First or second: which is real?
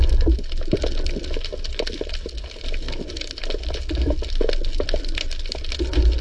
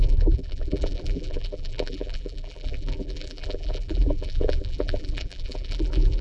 first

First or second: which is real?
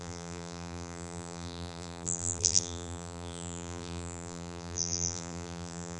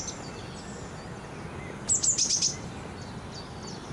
second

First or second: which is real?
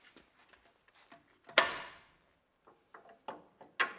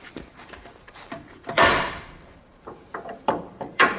first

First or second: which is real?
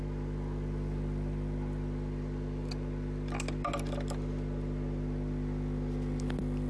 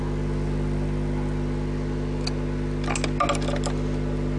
second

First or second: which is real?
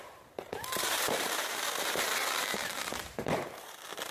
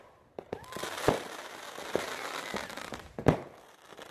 second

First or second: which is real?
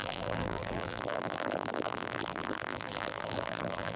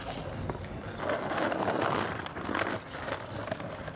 second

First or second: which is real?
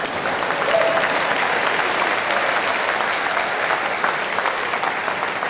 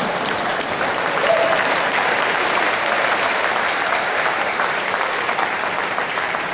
first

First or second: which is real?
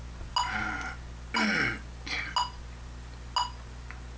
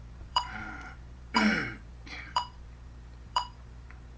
first